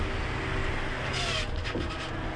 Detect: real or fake real